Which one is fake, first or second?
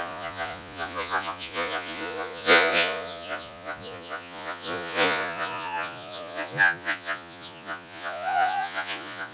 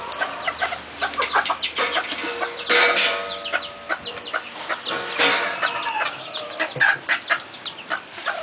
first